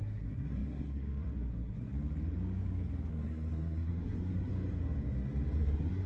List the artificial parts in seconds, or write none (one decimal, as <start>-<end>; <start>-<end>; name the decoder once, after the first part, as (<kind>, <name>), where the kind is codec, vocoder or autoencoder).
0.0-1.9 (codec, SNAC); 3.1-4.5; 5.6-6.1